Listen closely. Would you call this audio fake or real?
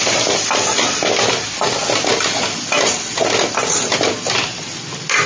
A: real